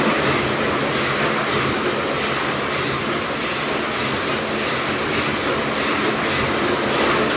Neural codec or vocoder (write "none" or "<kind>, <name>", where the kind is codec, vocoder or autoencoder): none